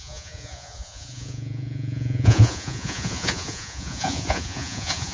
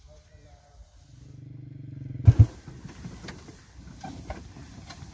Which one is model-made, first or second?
first